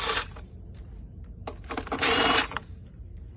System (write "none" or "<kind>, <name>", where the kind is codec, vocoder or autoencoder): vocoder, BigVGAN v2